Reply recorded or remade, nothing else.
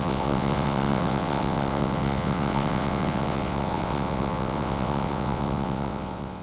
remade